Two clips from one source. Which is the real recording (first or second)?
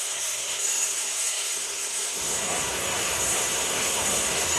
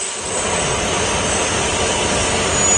second